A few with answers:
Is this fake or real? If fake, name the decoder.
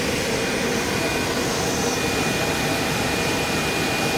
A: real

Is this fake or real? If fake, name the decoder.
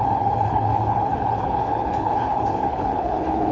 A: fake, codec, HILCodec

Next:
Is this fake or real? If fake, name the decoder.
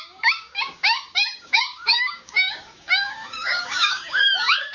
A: fake, codec, DAC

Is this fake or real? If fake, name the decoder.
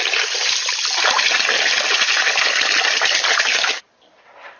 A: real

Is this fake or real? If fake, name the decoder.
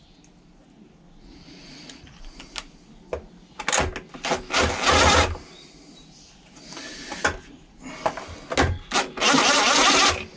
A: real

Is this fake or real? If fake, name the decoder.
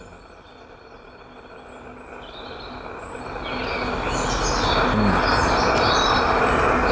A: real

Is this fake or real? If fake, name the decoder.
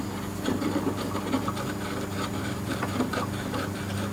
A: real